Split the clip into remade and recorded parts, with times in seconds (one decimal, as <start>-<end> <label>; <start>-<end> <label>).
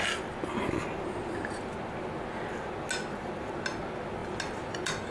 0.0-5.1 recorded